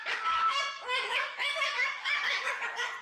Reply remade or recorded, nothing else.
remade